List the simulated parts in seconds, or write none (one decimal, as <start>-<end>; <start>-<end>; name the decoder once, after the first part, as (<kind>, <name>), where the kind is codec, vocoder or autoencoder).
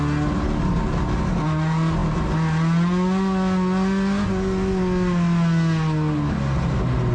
none